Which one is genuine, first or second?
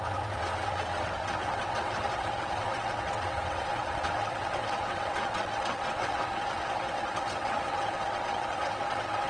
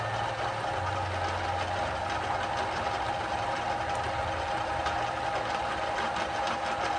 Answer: second